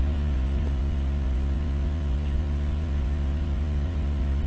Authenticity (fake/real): fake